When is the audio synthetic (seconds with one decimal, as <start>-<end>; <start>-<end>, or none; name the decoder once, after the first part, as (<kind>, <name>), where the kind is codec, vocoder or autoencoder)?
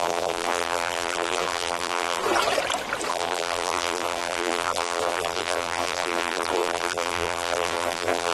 0.0-2.2 (vocoder, BigVGAN v2); 3.1-8.3